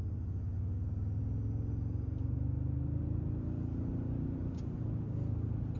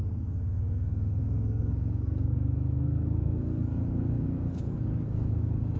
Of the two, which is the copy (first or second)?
second